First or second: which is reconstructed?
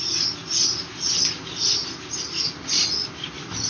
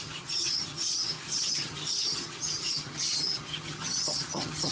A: second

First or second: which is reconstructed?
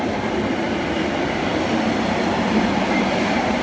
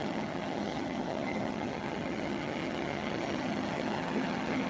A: second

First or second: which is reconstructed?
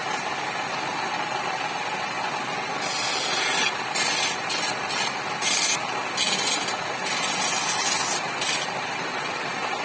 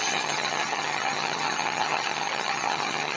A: second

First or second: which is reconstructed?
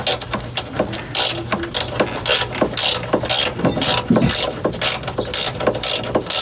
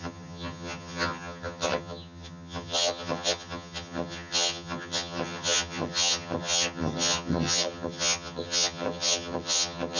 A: second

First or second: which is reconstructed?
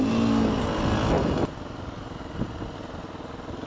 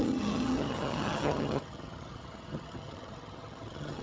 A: second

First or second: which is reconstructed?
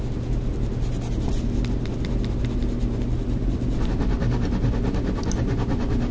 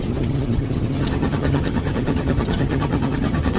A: second